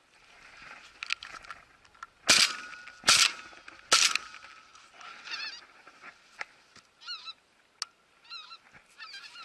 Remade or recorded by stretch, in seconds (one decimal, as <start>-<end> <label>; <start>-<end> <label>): 0.0-9.4 recorded